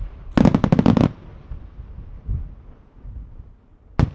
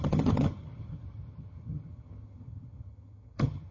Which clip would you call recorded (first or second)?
first